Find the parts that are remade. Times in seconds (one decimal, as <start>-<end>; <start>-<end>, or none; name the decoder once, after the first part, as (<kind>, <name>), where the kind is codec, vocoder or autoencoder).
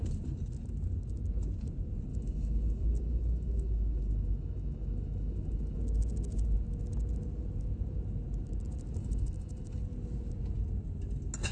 2.1-5.8 (autoencoder, DAC-VAE); 9.0-9.8